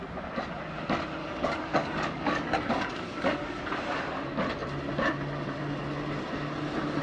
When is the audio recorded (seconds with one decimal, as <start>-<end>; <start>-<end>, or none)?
0.0-1.2; 3.6-7.0